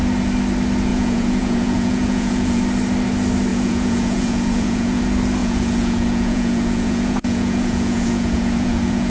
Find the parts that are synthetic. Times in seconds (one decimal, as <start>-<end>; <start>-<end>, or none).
0.9-2.6; 3.5-5.0; 5.4-9.1